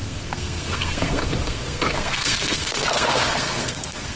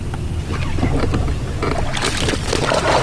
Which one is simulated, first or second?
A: first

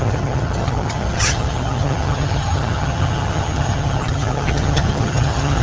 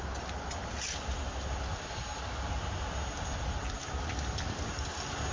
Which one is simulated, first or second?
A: first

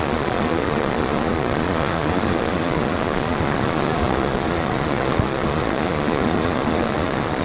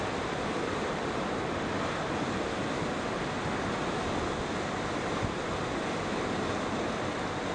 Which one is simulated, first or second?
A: first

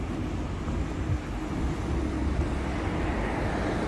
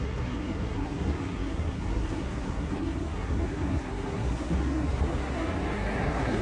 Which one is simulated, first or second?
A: second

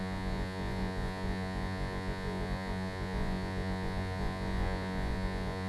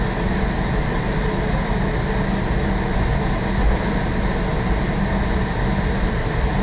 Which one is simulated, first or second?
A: first